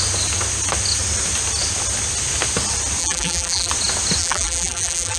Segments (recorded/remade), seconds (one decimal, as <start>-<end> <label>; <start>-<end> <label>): 0.0-3.0 recorded; 3.0-3.7 remade; 3.7-4.2 recorded; 4.2-5.2 remade